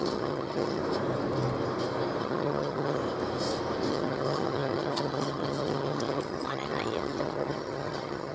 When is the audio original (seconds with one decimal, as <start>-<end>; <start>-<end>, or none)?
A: 0.8-2.2; 3.0-3.9